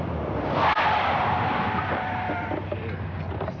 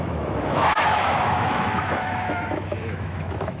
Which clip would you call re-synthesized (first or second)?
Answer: second